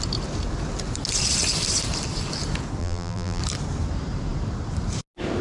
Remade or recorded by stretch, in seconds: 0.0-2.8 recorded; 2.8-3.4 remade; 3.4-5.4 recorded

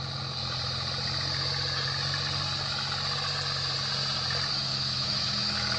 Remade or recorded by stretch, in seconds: 0.0-4.7 recorded; 4.7-5.8 remade

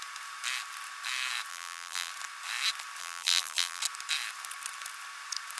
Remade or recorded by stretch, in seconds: 0.0-1.5 recorded; 1.5-2.1 remade; 2.1-3.0 recorded; 3.0-3.8 remade; 3.8-5.6 recorded

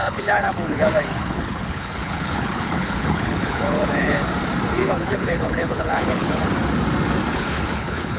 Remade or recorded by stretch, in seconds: 0.0-4.2 remade; 4.2-4.8 recorded; 4.8-6.4 remade; 6.4-7.3 recorded; 7.3-8.2 remade

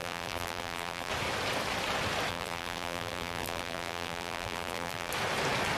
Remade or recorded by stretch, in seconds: 0.0-1.1 remade; 1.1-2.3 recorded; 2.3-5.1 remade; 5.1-5.8 recorded

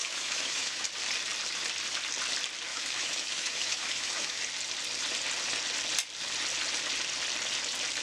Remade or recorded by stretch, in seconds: 0.0-0.9 remade; 0.9-2.7 recorded; 2.7-4.4 remade; 4.4-8.0 recorded

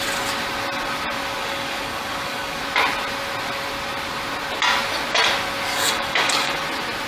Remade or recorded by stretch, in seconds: 0.0-1.4 recorded; 1.4-2.6 remade; 2.6-5.7 recorded; 5.7-6.6 remade; 6.6-7.1 recorded

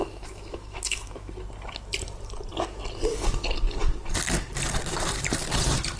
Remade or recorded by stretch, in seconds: 0.0-1.3 remade; 1.3-6.0 recorded